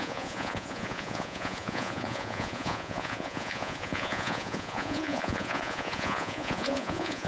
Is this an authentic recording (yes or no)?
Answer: no